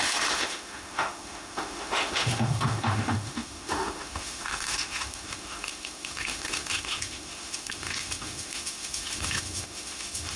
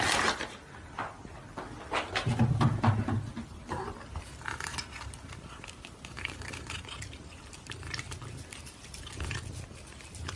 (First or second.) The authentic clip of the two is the second